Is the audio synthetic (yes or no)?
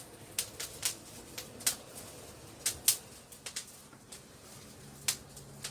no